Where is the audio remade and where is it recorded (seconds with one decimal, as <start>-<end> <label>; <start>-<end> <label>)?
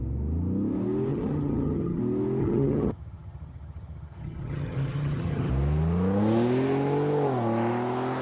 0.0-1.1 recorded; 1.1-2.0 remade; 2.0-2.4 recorded; 2.4-5.5 remade; 5.5-8.2 recorded